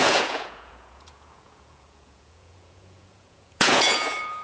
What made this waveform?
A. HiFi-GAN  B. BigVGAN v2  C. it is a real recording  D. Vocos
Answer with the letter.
D